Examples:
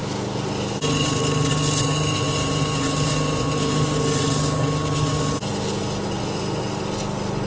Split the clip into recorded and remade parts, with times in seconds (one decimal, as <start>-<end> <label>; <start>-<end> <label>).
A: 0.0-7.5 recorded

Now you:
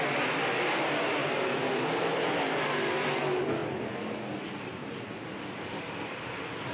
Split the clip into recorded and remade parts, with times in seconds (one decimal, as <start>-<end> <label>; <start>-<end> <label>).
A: 0.0-1.2 recorded; 1.2-3.2 remade; 3.2-6.7 recorded

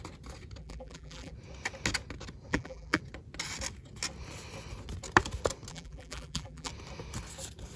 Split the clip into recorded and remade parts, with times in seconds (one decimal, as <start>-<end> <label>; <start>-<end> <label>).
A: 0.0-0.6 recorded; 0.6-1.3 remade; 1.3-2.5 recorded; 2.5-3.0 remade; 3.0-5.7 recorded; 5.7-6.7 remade; 6.7-7.8 recorded

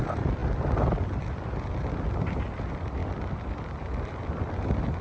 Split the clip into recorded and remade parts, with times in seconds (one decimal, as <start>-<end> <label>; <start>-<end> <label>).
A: 0.0-5.0 recorded

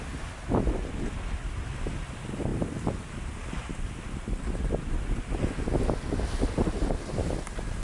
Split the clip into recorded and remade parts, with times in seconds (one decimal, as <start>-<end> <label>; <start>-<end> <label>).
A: 0.0-7.8 recorded

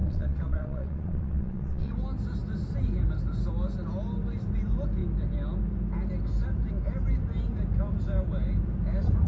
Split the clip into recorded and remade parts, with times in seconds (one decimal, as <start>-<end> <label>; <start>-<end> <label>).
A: 0.0-1.9 remade; 1.9-9.3 recorded